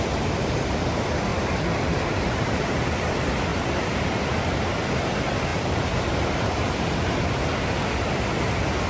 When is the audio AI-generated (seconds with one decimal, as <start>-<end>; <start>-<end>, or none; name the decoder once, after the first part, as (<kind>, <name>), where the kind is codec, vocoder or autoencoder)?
1.3-2.7 (vocoder, BigVGAN v2); 3.5-4.2; 5.5-8.3